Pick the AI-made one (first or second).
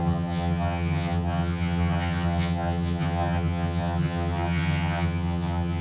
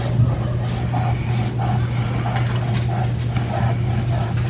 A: first